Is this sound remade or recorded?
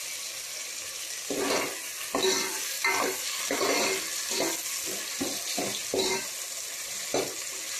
recorded